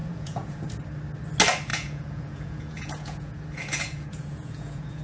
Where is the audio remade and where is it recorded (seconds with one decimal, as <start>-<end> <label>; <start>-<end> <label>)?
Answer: 0.0-0.7 remade; 0.7-1.7 recorded; 1.7-5.0 remade